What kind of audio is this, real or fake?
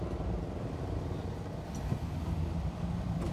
real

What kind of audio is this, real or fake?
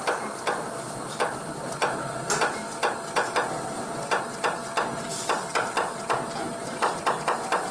real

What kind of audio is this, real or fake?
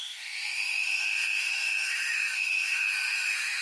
fake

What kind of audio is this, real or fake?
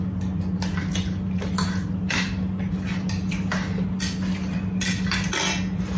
real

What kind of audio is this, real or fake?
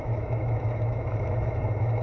fake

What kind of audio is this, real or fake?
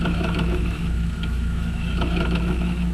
fake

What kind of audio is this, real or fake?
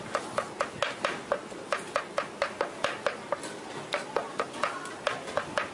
real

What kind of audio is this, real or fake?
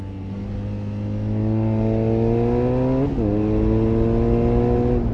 real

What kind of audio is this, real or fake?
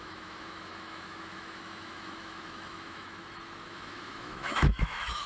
fake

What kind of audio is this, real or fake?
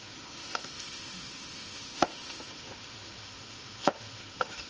fake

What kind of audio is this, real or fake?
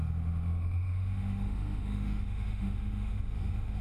fake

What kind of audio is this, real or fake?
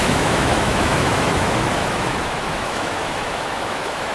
fake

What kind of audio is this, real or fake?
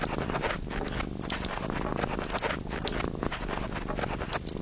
real